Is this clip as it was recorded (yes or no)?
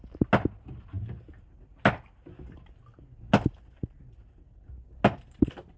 yes